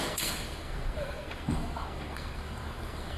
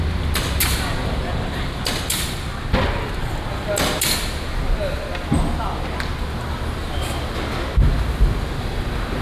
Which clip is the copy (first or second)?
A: first